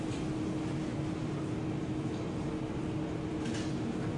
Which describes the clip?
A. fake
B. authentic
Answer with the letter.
B